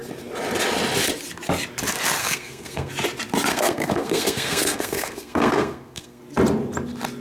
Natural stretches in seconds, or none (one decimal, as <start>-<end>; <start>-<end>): 0.0-2.2; 2.9-3.5; 6.2-7.2